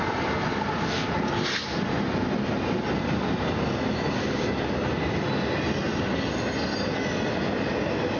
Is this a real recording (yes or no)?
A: yes